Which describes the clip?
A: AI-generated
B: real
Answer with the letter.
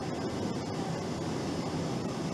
B